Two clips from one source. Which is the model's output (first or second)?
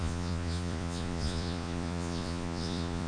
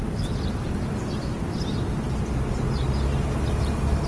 first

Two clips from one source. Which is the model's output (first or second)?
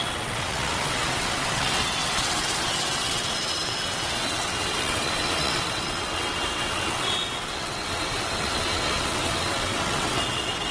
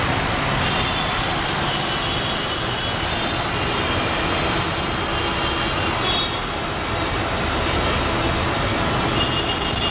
first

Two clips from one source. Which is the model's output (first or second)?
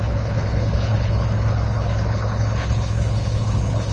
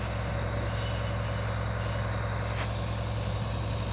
first